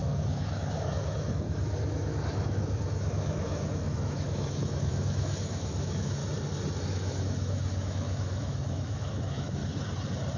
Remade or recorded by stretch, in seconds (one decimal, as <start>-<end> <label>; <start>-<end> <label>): 0.0-6.2 remade; 6.2-6.8 recorded; 6.8-9.6 remade; 9.6-10.4 recorded